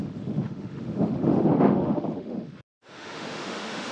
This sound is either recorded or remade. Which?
remade